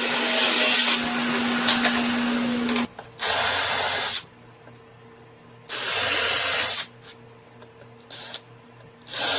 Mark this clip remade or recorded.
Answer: recorded